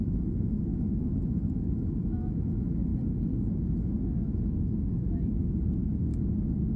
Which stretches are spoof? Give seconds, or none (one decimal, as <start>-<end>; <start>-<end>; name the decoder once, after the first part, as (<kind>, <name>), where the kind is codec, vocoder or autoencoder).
0.0-2.9 (autoencoder, DAC-VAE); 4.8-6.1